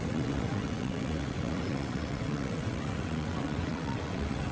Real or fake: fake